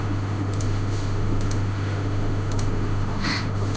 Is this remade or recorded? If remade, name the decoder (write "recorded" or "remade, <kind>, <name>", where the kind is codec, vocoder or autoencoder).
remade, autoencoder, DAC-VAE